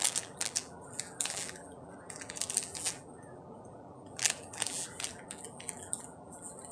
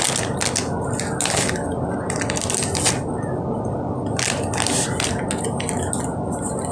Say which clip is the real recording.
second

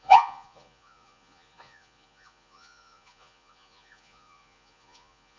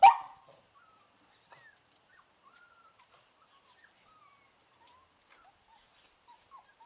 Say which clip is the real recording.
second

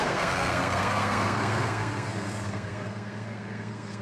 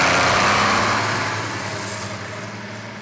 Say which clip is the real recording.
second